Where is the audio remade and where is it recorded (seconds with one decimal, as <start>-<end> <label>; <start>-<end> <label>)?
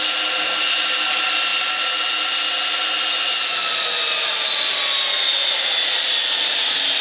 0.0-7.0 recorded